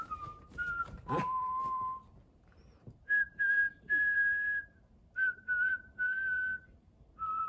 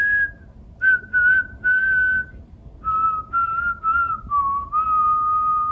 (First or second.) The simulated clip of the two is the first